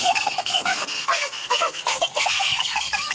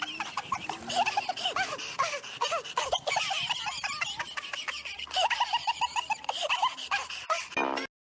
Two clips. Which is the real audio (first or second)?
second